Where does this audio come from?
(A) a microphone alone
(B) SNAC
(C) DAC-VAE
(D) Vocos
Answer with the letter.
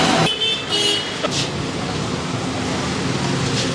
A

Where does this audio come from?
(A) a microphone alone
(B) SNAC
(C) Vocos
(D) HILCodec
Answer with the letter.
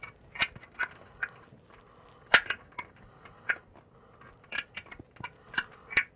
A